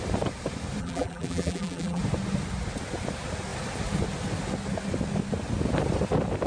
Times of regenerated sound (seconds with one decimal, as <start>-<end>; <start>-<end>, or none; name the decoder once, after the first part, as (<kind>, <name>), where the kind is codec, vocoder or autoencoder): 0.8-2.0 (vocoder, BigVGAN v2)